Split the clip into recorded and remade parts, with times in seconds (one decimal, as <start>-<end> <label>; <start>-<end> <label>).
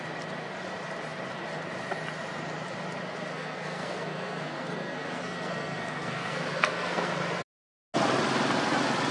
0.0-3.3 recorded; 3.3-7.2 remade; 7.2-9.1 recorded